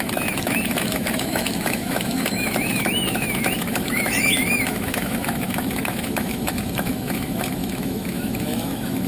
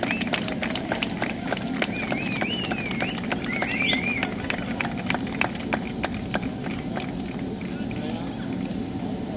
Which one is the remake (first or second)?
first